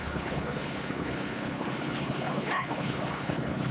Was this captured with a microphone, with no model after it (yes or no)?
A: no